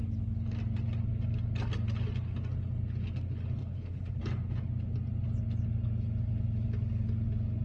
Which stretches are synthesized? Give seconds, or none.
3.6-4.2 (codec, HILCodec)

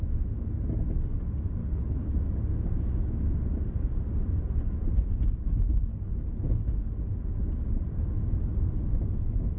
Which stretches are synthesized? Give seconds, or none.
1.6-2.2 (codec, HILCodec); 5.9-6.8

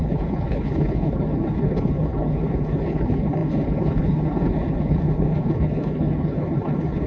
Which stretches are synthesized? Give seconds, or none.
0.0-7.1 (codec, HILCodec)

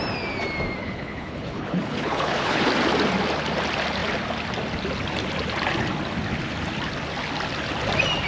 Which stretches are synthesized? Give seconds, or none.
0.8-2.7 (codec, HILCodec)

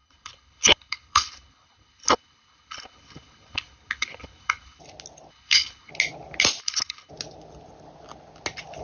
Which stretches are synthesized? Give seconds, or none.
0.0-4.8 (codec, HILCodec); 5.3-5.9; 6.6-7.1